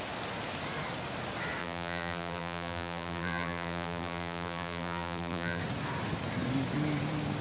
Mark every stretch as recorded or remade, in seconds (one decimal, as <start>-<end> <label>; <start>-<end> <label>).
0.0-1.6 recorded; 1.6-5.6 remade; 5.6-7.4 recorded